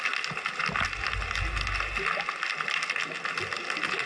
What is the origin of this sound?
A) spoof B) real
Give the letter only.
B